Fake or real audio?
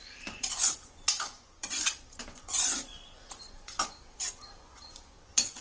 fake